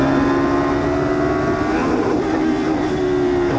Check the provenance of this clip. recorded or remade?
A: recorded